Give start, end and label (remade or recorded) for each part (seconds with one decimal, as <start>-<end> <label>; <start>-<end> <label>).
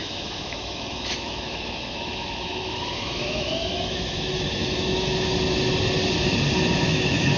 0.0-5.3 remade; 5.3-6.8 recorded; 6.8-7.4 remade